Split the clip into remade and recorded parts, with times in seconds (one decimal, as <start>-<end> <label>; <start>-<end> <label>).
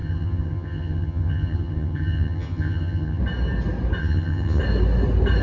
0.0-3.2 remade; 3.2-4.0 recorded; 4.0-4.6 remade; 4.6-5.4 recorded